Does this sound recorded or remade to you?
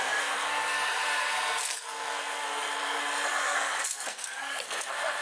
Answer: remade